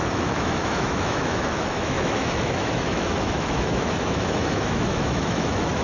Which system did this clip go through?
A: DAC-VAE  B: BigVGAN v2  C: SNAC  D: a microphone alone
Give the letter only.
A